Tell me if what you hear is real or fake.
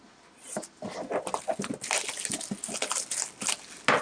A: real